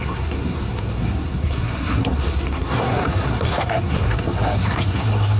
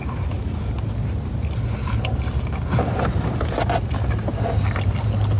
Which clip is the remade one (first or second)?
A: first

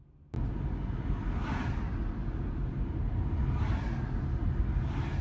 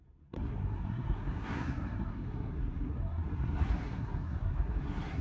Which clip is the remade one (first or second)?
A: second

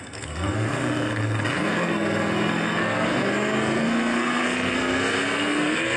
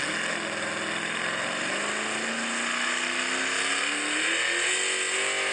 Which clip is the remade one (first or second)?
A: first